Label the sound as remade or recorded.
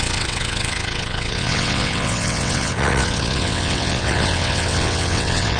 remade